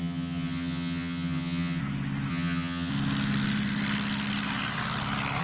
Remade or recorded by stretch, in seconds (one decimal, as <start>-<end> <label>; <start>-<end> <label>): 0.0-1.8 remade; 1.8-2.3 recorded; 2.3-2.9 remade; 2.9-5.4 recorded